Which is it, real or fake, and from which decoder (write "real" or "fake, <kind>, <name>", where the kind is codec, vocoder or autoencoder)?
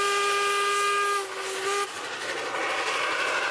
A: real